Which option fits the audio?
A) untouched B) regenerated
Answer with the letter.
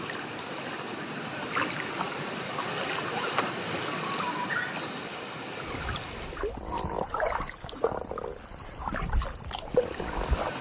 A